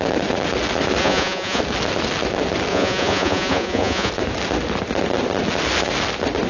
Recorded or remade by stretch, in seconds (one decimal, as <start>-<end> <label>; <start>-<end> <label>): 0.0-1.0 recorded; 1.0-1.6 remade; 1.6-2.7 recorded; 2.7-4.1 remade; 4.1-6.5 recorded